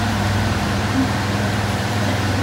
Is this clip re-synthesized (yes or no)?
yes